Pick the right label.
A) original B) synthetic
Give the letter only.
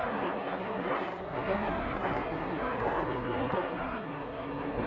B